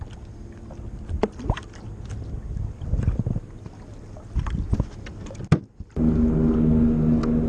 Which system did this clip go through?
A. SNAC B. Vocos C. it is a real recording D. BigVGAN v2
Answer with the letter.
C